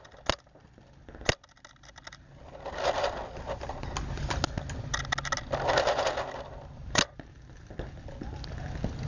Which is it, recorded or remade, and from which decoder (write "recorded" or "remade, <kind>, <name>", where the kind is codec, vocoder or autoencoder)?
recorded